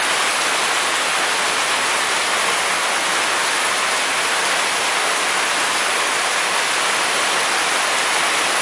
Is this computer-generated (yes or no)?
no